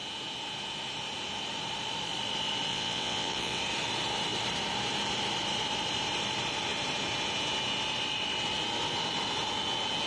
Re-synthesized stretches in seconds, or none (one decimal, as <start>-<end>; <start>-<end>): 2.7-3.6